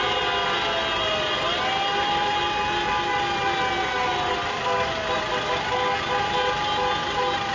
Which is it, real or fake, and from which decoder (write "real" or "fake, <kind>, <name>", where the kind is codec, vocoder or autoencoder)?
real